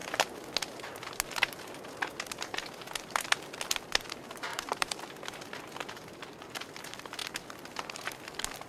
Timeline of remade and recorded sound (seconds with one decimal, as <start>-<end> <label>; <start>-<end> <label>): 0.0-4.5 recorded; 4.5-5.1 remade; 5.1-8.7 recorded